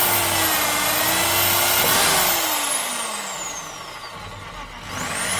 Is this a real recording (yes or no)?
yes